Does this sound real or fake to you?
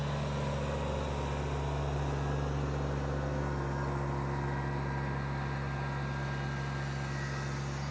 real